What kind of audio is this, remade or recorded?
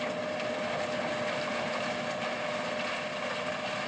recorded